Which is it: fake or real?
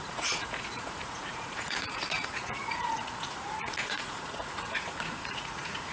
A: fake